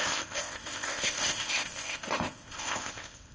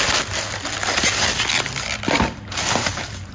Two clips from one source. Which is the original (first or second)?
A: second